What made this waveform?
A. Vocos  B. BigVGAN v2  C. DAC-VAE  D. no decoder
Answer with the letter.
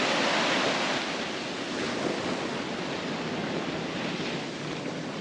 D